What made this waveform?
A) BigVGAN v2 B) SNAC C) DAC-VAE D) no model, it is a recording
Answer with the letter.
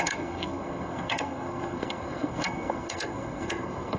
B